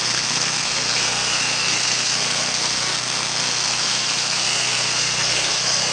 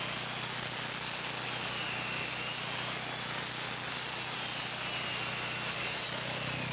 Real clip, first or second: second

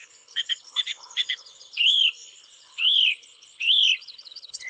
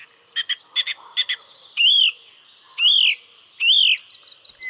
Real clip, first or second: second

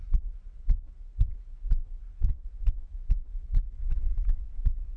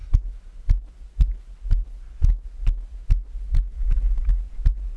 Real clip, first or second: second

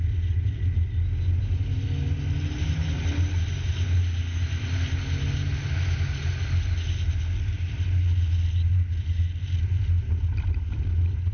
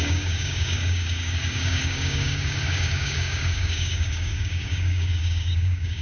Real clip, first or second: first